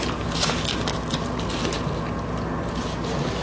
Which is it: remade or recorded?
recorded